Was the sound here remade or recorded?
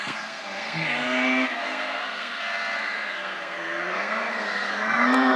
remade